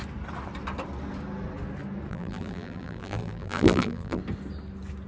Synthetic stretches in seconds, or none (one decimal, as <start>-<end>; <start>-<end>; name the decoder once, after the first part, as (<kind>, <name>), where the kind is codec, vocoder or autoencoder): 2.1-4.2 (vocoder, BigVGAN v2)